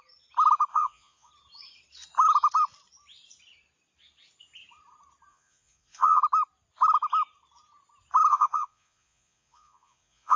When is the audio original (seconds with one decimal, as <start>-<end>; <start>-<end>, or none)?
0.0-0.7; 1.3-5.3; 6.2-8.3